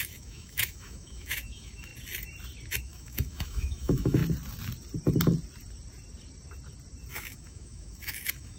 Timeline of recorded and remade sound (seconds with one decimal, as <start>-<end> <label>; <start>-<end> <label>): 0.0-1.9 remade; 1.9-2.8 recorded; 2.8-4.2 remade; 4.2-7.1 recorded; 7.1-8.6 remade